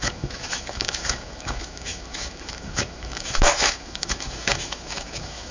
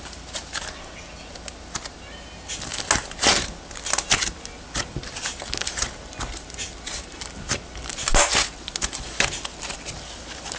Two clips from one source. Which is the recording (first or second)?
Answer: second